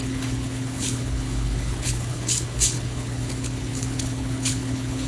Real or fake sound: fake